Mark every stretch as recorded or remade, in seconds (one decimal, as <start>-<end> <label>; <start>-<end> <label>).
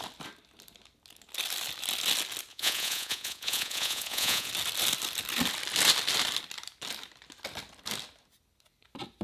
0.0-2.5 recorded; 2.5-4.5 remade; 4.5-9.2 recorded